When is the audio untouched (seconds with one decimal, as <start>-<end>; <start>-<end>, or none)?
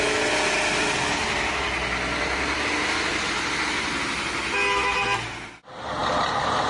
0.0-6.7